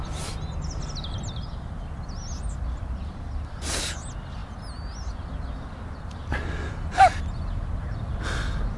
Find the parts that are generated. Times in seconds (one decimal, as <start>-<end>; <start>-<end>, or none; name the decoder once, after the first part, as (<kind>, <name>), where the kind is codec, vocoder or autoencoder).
none